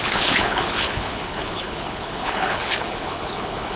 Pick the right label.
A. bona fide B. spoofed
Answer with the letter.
B